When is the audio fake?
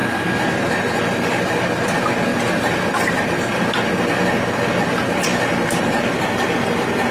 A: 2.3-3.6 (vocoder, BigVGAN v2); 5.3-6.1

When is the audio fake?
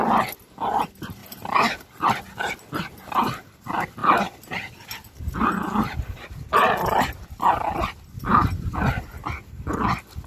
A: none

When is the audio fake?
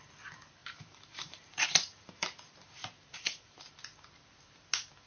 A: 0.6-3.7 (vocoder, BigVGAN v2)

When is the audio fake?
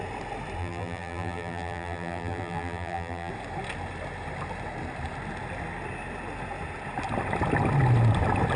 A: 0.6-3.3 (vocoder, BigVGAN v2)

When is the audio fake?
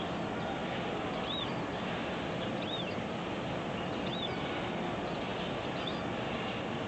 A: none